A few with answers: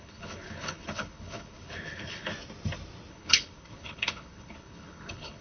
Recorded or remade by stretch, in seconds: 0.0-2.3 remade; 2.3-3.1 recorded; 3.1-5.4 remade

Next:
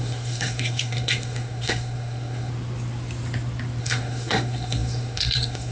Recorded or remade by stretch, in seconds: 0.0-2.5 remade; 2.5-3.8 recorded; 3.8-5.7 remade

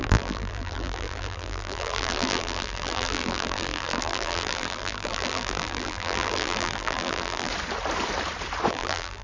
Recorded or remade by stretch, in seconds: 0.0-7.5 remade; 7.5-8.7 recorded; 8.7-9.2 remade

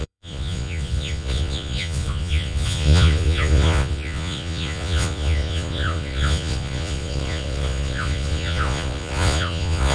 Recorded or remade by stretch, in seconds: 0.0-9.9 remade

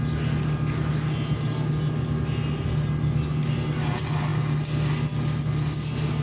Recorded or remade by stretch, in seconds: 0.0-6.2 recorded

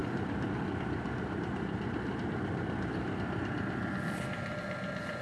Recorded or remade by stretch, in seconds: 0.0-5.2 recorded